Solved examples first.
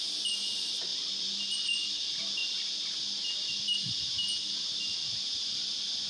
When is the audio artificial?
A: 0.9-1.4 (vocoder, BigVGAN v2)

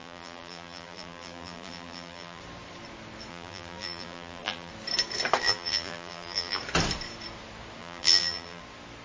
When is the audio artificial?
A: 0.0-2.4 (vocoder, BigVGAN v2); 3.3-4.7; 5.4-6.6; 7.8-8.6

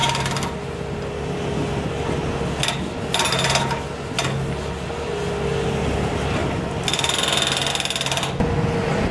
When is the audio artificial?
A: none

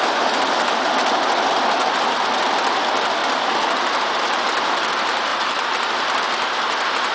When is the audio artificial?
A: 3.2-4.8 (vocoder, BigVGAN v2); 5.3-5.9